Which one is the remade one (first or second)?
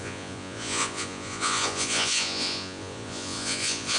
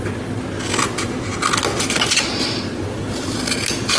first